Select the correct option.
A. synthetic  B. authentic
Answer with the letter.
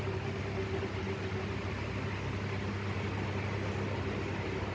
B